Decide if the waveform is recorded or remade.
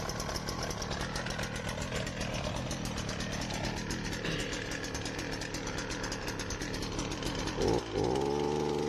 recorded